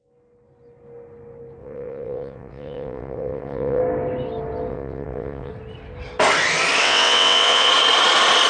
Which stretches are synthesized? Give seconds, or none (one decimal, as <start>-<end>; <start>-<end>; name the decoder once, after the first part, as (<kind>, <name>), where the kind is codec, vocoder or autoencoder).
1.6-3.8 (vocoder, WaveNeXt); 4.7-5.5; 6.8-7.7